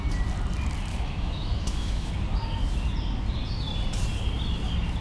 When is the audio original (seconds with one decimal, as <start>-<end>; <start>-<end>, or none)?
0.0-0.9; 2.1-5.0